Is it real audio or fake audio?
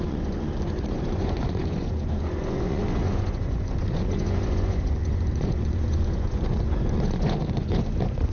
fake